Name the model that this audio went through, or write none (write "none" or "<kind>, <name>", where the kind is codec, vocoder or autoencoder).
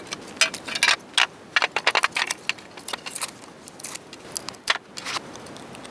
none